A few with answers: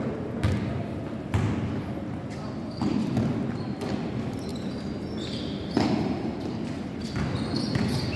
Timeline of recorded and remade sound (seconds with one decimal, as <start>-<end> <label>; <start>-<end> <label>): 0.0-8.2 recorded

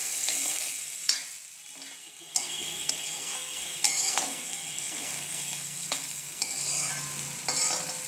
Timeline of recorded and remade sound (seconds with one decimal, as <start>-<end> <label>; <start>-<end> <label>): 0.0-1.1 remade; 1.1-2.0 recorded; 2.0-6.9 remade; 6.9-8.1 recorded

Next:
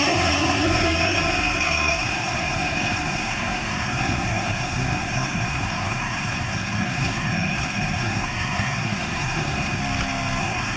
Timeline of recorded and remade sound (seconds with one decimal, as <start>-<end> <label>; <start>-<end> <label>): 0.0-9.8 remade; 9.8-10.4 recorded; 10.4-10.8 remade